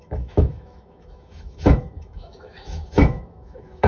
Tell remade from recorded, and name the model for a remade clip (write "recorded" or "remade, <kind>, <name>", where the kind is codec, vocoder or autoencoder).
remade, autoencoder, DAC-VAE